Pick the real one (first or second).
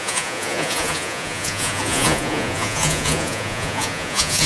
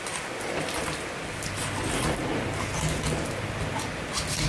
second